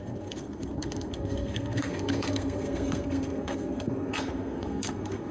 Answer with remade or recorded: remade